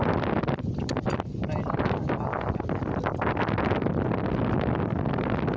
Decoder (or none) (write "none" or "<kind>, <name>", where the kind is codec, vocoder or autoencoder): none